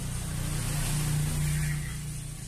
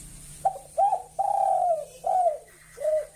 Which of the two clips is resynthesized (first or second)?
second